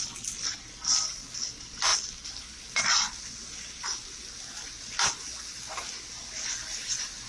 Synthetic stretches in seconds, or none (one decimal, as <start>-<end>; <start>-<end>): none